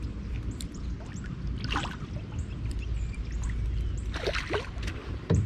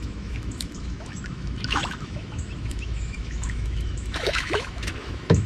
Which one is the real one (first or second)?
first